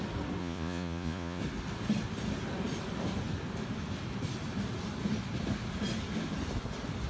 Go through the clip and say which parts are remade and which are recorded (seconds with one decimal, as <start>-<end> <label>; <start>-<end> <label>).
0.0-0.4 recorded; 0.4-1.4 remade; 1.4-7.1 recorded